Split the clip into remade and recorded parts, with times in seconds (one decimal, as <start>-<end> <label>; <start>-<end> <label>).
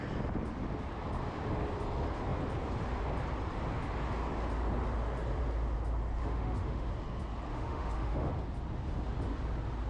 0.0-6.2 recorded; 6.2-6.9 remade; 6.9-7.5 recorded; 7.5-8.3 remade; 8.3-9.9 recorded